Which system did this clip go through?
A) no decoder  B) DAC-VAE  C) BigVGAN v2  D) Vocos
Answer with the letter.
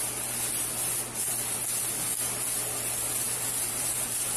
A